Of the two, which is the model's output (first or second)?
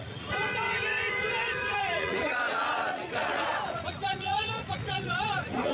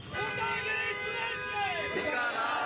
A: first